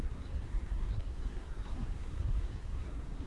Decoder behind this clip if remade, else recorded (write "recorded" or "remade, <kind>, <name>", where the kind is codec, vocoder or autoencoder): remade, codec, SNAC